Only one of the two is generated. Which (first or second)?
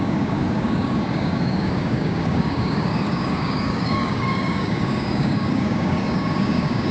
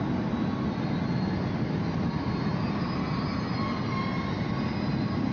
first